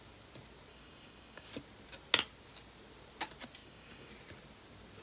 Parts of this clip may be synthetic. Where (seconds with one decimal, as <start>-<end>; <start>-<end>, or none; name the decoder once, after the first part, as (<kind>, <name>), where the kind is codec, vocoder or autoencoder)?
0.7-1.5 (codec, DAC); 3.6-4.1